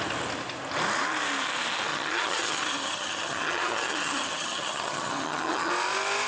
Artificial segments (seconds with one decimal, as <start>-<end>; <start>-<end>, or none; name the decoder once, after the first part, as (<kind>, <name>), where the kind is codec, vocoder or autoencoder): 1.9-5.7 (vocoder, HiFi-GAN)